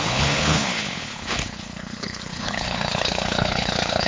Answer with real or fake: fake